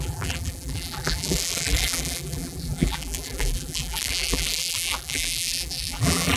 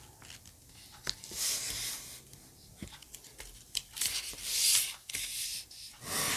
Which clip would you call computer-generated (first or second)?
first